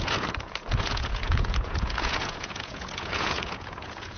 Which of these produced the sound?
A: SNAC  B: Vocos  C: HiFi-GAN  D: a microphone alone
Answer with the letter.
B